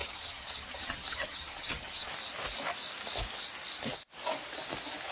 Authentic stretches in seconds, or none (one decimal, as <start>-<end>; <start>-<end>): 2.1-5.1